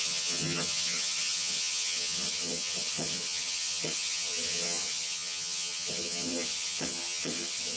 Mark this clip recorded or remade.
remade